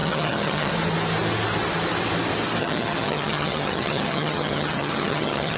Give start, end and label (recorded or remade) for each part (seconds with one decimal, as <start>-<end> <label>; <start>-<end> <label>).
0.0-0.7 remade; 0.7-2.6 recorded; 2.6-5.6 remade